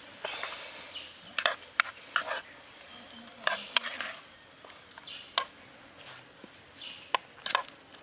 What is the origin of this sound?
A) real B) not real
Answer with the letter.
A